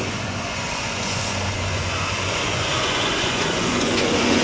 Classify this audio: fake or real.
fake